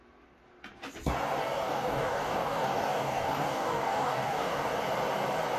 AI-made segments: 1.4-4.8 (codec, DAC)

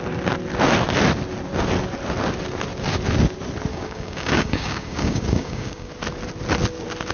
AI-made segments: 3.7-5.9 (codec, DAC)

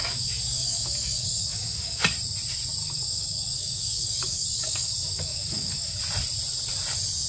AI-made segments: 0.0-2.0 (codec, DAC); 2.8-6.0

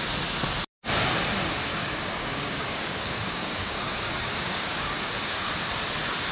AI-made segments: 1.7-5.5 (codec, DAC)

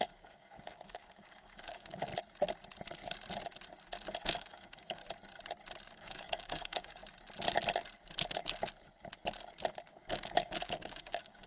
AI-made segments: 0.0-2.1 (codec, DAC); 4.2-5.0; 5.9-7.0; 9.9-11.5

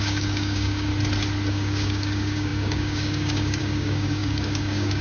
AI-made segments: 0.0-0.9 (codec, DAC); 1.5-5.0